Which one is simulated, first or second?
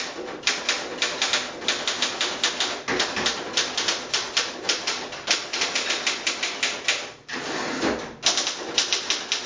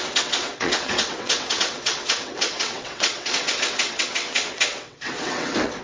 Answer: second